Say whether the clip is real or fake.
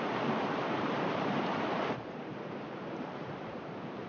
fake